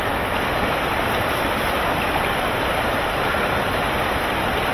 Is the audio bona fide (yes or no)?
yes